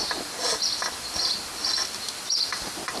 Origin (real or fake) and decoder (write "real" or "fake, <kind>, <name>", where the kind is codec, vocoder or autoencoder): real